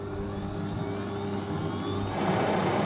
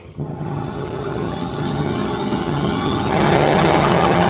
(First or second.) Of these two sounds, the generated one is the second